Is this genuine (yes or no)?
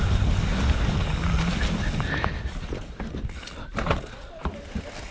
yes